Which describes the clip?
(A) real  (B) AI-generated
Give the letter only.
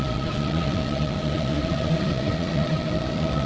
B